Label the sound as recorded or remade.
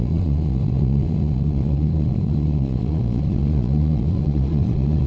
remade